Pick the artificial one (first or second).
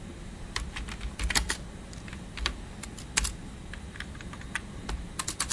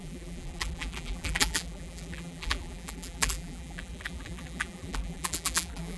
second